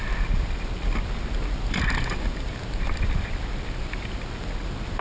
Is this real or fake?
real